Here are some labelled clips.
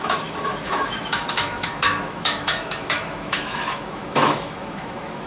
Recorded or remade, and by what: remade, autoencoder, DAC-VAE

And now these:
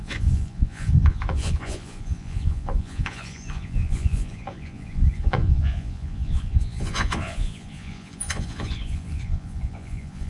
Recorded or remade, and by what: remade, vocoder, Vocos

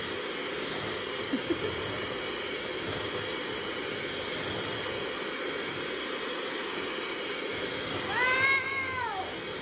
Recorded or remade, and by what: recorded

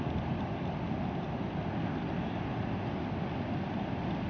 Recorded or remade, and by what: recorded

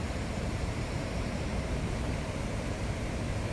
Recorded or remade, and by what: remade, vocoder, BigVGAN v2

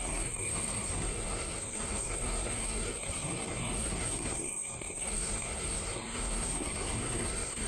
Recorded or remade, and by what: remade, codec, SNAC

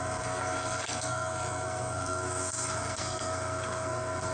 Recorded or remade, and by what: remade, codec, SNAC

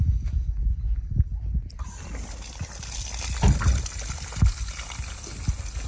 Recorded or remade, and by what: recorded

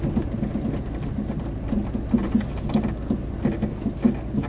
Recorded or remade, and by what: recorded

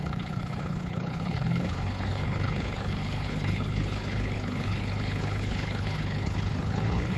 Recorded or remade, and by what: remade, codec, HILCodec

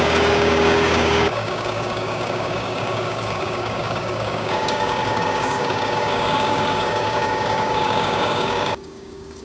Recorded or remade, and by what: remade, codec, DAC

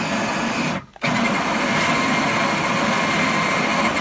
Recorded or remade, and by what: recorded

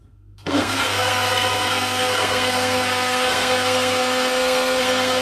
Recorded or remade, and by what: remade, codec, SNAC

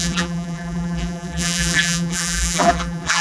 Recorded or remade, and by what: remade, vocoder, BigVGAN v2